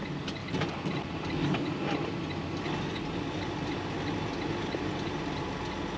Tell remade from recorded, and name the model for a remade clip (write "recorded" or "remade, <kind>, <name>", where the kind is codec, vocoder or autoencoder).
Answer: recorded